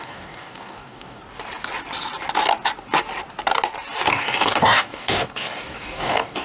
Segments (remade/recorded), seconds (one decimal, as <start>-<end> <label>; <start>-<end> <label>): 0.0-1.2 remade; 1.2-4.1 recorded; 4.1-6.4 remade